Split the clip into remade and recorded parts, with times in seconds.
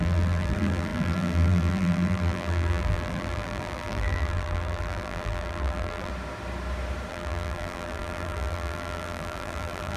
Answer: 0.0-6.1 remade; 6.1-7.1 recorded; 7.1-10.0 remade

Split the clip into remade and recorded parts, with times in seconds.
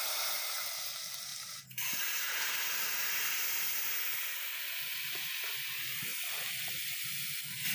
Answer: 0.0-1.3 recorded; 1.3-2.6 remade; 2.6-7.7 recorded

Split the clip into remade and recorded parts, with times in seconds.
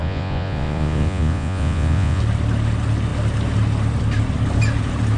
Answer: 0.0-2.2 remade; 2.2-5.2 recorded